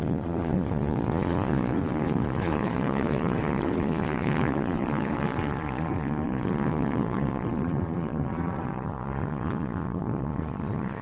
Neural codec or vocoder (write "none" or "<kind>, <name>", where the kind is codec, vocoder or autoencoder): vocoder, Vocos